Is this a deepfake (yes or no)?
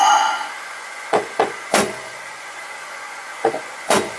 yes